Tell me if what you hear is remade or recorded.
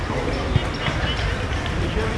recorded